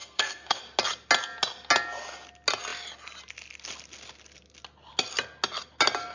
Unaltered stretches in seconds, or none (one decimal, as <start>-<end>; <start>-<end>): 0.6-6.1